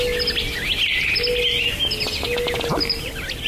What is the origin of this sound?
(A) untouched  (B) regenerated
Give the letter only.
A